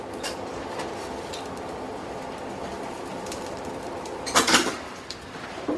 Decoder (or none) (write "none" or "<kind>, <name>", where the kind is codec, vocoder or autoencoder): vocoder, BigVGAN v2